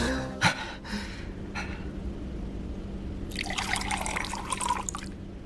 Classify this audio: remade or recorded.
recorded